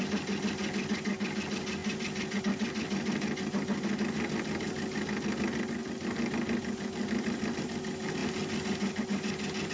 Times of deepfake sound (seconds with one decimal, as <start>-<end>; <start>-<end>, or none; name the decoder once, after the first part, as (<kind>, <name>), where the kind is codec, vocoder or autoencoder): none